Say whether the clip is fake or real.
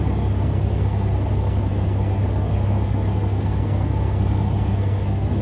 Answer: fake